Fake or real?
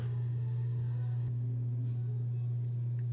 real